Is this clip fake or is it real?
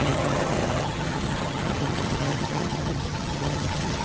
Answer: fake